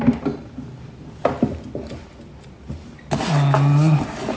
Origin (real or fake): real